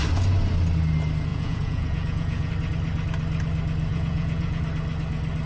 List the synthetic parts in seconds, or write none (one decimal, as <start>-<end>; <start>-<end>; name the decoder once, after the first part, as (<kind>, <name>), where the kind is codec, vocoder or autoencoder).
1.3-2.5 (vocoder, Vocos); 3.9-4.6